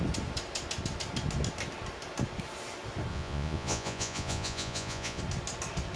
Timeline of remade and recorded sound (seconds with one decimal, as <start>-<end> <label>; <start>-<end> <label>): 0.0-3.1 recorded; 3.1-5.2 remade; 5.2-6.0 recorded

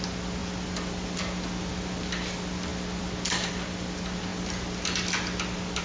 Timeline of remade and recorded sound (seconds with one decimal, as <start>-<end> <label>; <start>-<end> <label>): 0.0-5.8 recorded